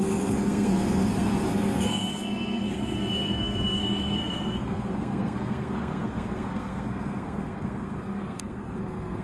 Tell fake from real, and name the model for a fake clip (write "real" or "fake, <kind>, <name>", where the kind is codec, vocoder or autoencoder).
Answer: fake, codec, SNAC